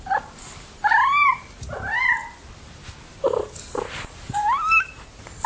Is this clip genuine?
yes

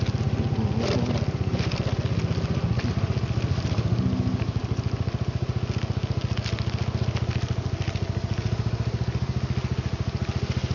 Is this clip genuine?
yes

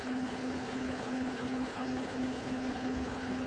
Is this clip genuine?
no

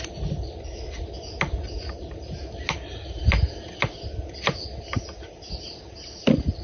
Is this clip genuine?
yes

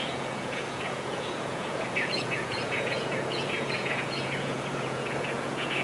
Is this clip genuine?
no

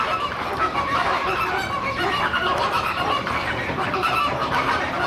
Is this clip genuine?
no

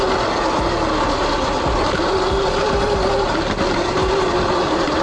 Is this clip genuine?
yes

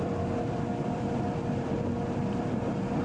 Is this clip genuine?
no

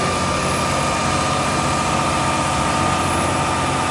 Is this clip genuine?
yes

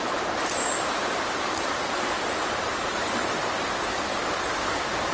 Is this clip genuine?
yes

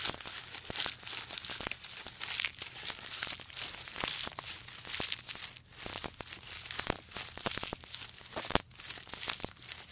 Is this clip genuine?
yes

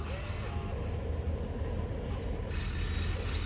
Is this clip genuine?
yes